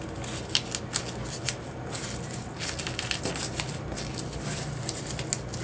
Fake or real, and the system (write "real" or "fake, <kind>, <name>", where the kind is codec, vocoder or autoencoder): real